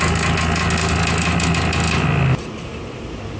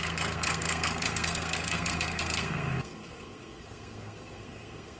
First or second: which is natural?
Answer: first